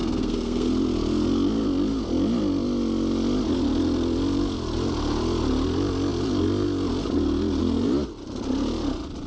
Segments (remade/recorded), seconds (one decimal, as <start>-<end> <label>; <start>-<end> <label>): 0.0-0.7 remade; 0.7-9.3 recorded